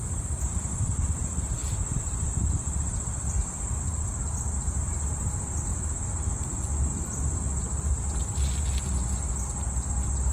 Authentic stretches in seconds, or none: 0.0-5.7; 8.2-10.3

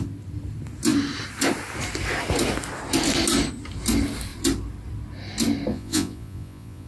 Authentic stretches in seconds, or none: 0.0-5.7

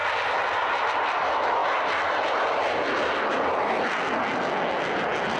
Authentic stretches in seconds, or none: 0.0-5.4

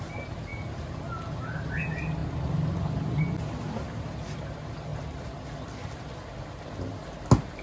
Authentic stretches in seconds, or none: 0.0-7.6

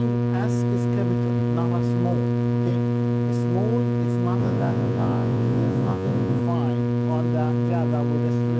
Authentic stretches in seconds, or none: 0.0-4.4; 6.4-8.6